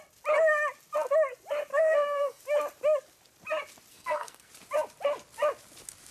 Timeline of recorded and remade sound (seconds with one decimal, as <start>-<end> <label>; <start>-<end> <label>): 0.0-1.7 recorded; 1.7-2.4 remade; 2.4-3.9 recorded; 3.9-4.5 remade; 4.5-6.1 recorded